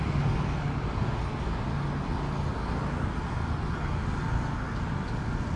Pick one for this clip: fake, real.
real